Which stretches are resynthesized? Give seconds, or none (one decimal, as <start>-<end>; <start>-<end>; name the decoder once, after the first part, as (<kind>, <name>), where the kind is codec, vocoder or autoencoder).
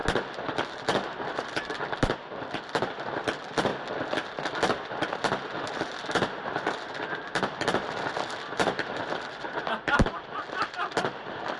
1.3-3.7 (vocoder, BigVGAN v2); 5.1-11.6